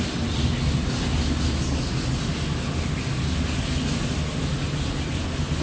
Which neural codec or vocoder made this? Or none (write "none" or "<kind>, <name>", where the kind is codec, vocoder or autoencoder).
none